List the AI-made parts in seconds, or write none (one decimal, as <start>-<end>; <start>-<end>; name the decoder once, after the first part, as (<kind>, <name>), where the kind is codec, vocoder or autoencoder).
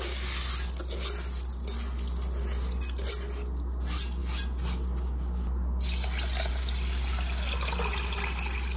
none